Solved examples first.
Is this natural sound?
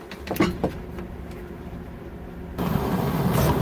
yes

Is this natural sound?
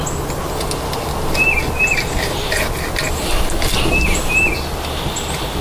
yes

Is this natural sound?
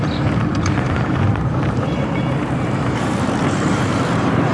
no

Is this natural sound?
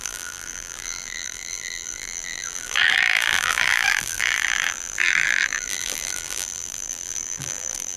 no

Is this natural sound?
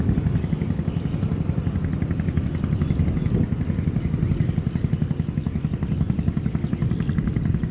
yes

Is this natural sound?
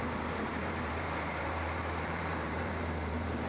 no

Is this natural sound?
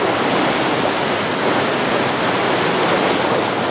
yes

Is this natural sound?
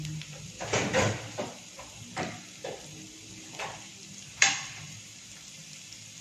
no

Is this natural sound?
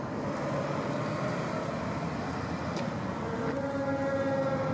yes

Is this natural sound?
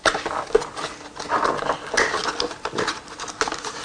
yes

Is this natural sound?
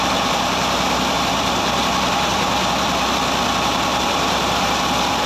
no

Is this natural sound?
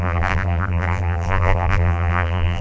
no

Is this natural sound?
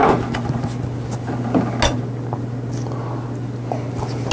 yes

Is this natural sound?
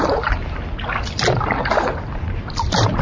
yes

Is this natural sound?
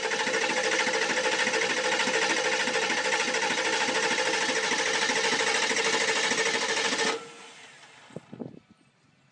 yes